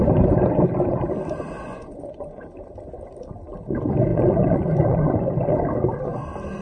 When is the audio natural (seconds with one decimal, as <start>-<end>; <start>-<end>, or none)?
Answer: 0.0-1.6; 2.4-4.1; 5.1-6.6